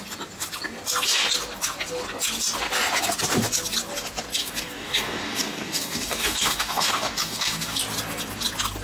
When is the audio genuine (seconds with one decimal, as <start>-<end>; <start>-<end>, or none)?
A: 0.0-4.4; 7.8-8.8